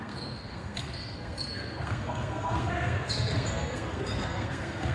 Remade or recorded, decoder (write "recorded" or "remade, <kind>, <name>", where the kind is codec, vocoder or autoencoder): remade, codec, SNAC